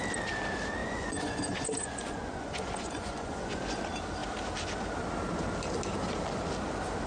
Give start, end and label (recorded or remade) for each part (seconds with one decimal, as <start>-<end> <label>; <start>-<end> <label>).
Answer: 0.0-0.8 recorded; 0.8-3.8 remade; 3.8-7.1 recorded